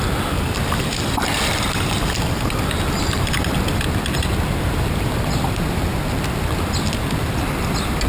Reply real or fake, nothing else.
real